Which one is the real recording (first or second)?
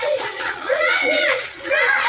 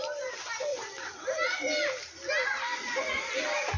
second